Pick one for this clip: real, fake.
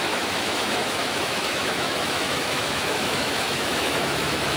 fake